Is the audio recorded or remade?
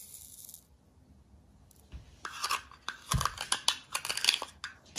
recorded